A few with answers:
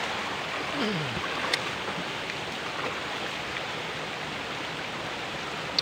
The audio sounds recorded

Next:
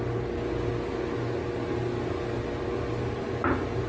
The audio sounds recorded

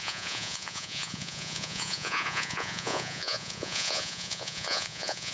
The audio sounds remade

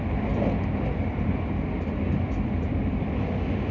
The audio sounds recorded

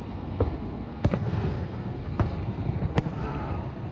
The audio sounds remade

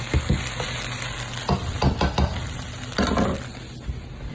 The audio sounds recorded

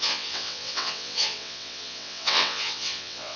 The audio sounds remade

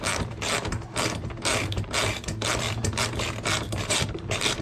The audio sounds remade